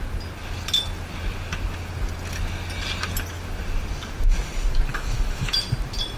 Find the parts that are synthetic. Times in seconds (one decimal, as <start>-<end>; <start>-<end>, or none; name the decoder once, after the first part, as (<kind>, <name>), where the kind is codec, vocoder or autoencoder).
4.9-5.6 (autoencoder, DAC-VAE)